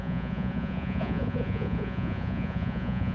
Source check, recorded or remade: remade